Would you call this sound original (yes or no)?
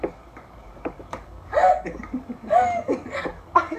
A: no